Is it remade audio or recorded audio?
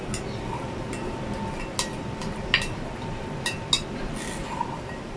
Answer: recorded